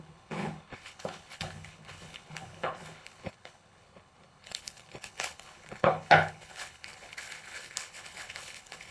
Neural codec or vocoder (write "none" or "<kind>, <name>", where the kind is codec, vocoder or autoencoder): codec, HILCodec